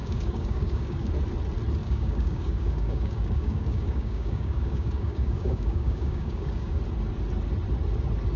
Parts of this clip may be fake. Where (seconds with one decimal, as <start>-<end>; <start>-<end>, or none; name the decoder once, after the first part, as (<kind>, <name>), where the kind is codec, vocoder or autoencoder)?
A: 0.0-1.1 (codec, DAC); 1.8-6.8